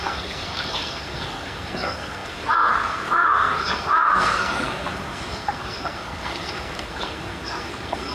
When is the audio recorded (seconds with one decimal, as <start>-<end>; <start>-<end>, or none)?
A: none